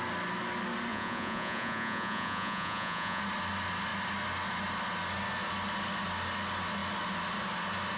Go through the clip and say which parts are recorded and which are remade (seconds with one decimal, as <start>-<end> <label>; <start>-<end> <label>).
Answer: 0.0-0.9 recorded; 0.9-3.2 remade; 3.2-8.0 recorded